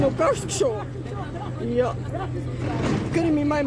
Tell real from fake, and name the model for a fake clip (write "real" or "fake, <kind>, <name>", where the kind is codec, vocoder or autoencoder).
real